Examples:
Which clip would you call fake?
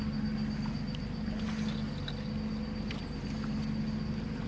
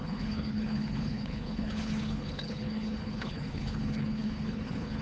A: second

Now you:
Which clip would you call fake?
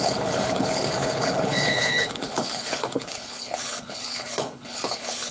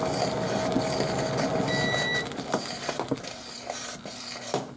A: first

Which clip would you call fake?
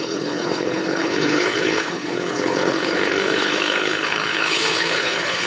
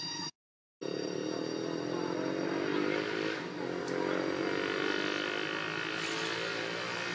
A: first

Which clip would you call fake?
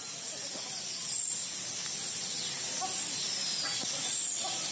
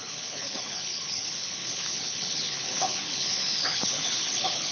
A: second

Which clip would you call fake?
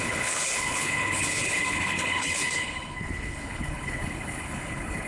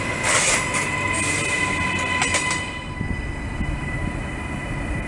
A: first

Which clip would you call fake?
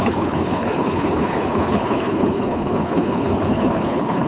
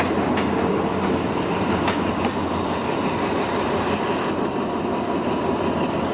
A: first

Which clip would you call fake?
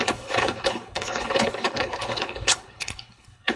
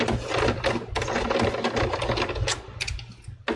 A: first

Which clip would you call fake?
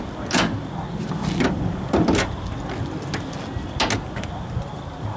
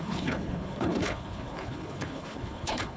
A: second